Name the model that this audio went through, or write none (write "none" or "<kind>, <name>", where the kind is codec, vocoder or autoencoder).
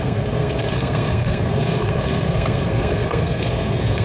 codec, SNAC